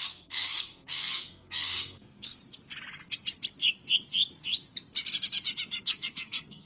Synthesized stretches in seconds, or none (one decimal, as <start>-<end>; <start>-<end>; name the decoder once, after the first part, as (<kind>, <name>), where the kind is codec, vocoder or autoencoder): 0.0-2.4 (codec, SNAC); 5.8-6.7